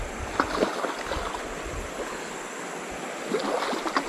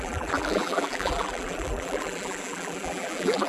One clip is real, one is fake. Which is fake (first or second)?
second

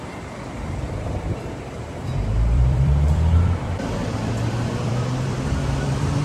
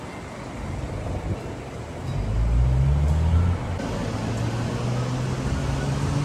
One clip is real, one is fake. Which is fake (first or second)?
first